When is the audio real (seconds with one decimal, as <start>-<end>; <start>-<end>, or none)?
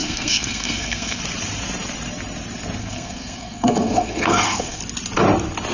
1.2-2.8; 4.8-5.7